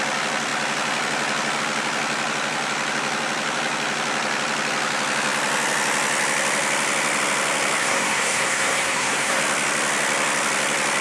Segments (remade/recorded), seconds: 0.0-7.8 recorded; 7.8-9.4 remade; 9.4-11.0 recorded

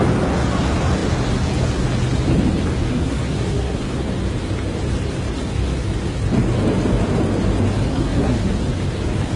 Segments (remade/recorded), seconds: 0.0-2.9 recorded; 2.9-3.8 remade; 3.8-7.9 recorded; 7.9-8.5 remade; 8.5-9.4 recorded

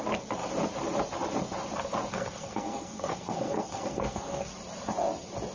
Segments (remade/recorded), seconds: 0.0-2.1 recorded; 2.1-4.5 remade; 4.5-5.5 recorded

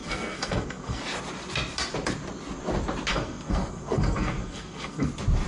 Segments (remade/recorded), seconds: 0.0-1.0 remade; 1.0-3.1 recorded; 3.1-5.1 remade; 5.1-5.5 recorded

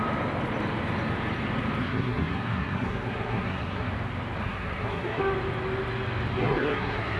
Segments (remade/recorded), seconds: 0.0-1.8 recorded; 1.8-3.9 remade; 3.9-4.4 recorded; 4.4-5.2 remade; 5.2-6.4 recorded; 6.4-7.2 remade

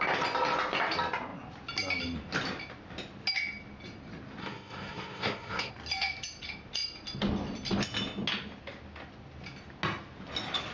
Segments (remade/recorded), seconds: 0.0-4.4 recorded; 4.4-5.7 remade; 5.7-10.7 recorded

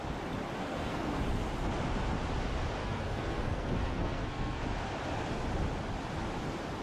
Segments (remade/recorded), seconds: 0.0-0.6 recorded; 0.6-1.2 remade; 1.2-2.8 recorded; 2.8-4.6 remade; 4.6-6.8 recorded